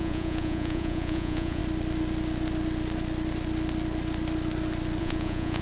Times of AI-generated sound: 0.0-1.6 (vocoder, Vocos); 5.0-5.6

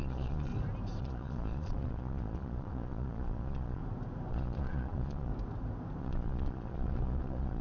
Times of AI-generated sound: 0.0-0.5 (vocoder, Vocos); 1.0-3.8; 4.3-5.3; 6.0-7.6

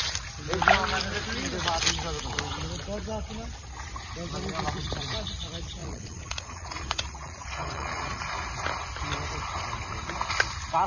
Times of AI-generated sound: 5.8-8.2 (vocoder, Vocos)